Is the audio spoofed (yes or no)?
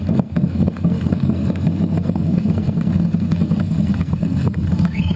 yes